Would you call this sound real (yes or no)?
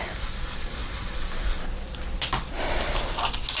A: yes